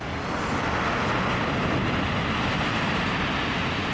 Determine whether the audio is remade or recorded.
recorded